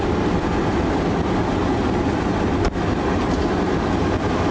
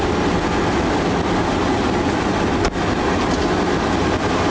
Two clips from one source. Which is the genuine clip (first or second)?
second